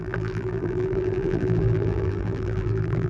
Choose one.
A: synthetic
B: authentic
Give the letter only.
A